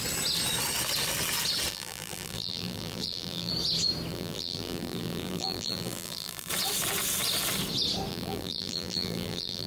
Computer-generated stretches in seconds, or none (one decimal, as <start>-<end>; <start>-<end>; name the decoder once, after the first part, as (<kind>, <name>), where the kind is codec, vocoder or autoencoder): 1.7-3.5 (vocoder, BigVGAN v2); 4.1-6.5; 8.1-9.7